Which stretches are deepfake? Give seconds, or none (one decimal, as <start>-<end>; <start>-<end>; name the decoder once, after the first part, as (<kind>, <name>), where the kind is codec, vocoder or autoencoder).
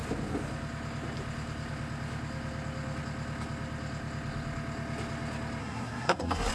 5.6-6.5 (codec, SNAC)